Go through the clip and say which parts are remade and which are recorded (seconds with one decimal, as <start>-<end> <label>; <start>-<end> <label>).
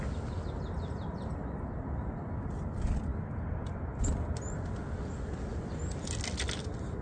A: 0.0-7.0 recorded